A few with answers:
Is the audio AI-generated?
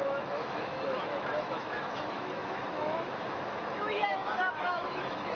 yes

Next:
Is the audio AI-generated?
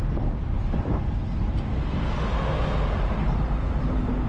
no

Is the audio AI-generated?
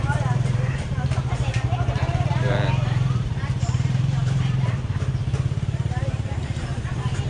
yes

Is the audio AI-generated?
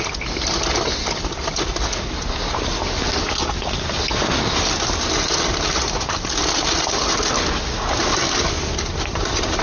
no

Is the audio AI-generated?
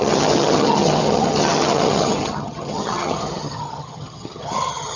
yes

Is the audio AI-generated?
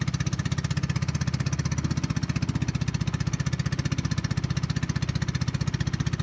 no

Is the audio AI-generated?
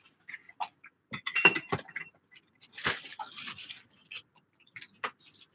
yes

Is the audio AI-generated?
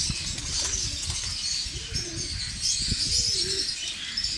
no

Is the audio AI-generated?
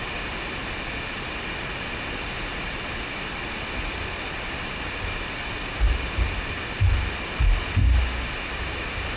no